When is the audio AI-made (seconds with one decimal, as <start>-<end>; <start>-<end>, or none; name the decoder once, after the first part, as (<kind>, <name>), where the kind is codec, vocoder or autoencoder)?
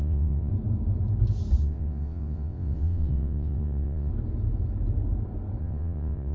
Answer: 0.0-0.5 (vocoder, WaveNeXt); 1.6-4.1; 5.6-6.3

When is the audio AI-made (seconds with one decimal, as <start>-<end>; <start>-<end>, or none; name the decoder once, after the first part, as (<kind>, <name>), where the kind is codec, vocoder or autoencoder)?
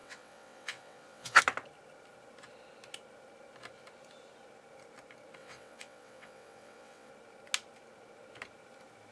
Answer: 0.0-1.4 (vocoder, WaveNeXt); 5.4-7.1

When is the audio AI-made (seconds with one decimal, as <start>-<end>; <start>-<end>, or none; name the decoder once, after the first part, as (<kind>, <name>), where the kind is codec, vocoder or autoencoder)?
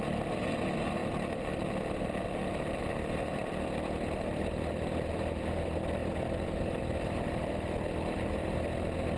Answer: none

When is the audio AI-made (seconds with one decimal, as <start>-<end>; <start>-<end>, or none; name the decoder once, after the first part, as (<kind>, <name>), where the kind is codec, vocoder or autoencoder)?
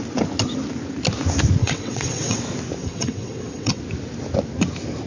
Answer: 1.6-2.4 (vocoder, WaveNeXt); 2.8-3.8